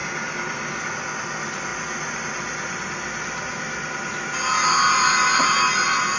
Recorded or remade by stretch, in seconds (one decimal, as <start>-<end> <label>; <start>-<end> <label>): 0.0-6.2 recorded